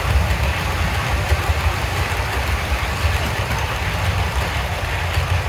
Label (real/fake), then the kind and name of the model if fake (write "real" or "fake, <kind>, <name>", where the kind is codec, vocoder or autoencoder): real